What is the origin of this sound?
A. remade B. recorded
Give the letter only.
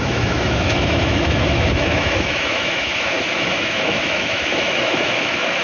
A